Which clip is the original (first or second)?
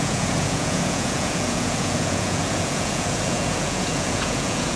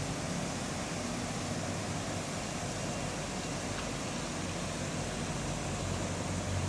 second